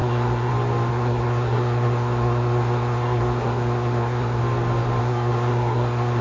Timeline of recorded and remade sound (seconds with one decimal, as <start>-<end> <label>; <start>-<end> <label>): 0.0-0.5 remade; 0.5-0.9 recorded; 0.9-4.4 remade; 4.4-5.0 recorded; 5.0-6.2 remade